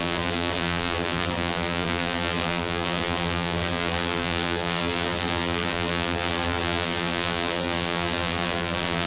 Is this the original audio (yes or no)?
no